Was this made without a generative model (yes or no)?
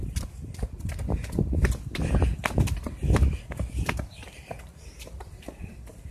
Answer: no